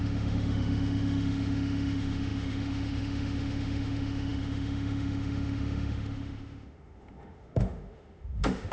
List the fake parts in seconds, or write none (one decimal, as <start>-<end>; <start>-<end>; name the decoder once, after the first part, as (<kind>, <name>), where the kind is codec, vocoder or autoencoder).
0.0-8.7 (autoencoder, DAC-VAE)